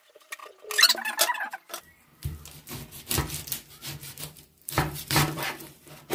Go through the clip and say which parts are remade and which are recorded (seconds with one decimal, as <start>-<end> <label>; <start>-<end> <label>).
0.0-0.4 remade; 0.4-3.8 recorded; 3.8-6.1 remade